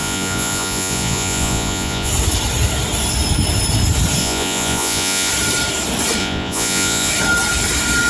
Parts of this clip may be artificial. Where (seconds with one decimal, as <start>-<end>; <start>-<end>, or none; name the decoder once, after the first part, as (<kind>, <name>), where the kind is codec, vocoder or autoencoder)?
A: 0.0-2.1 (vocoder, Vocos); 4.2-5.3; 6.2-7.1